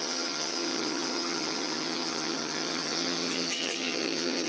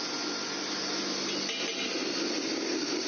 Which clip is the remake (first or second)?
first